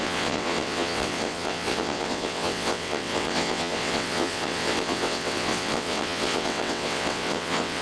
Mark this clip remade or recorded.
remade